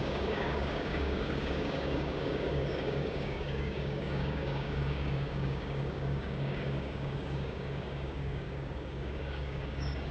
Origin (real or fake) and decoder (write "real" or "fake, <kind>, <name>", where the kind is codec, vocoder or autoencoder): fake, codec, DAC